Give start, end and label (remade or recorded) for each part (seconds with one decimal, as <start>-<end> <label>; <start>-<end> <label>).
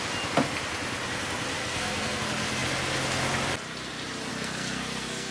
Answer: 0.0-1.6 recorded; 1.6-2.2 remade; 2.2-4.3 recorded; 4.3-5.3 remade